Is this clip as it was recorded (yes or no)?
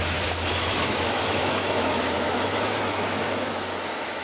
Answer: no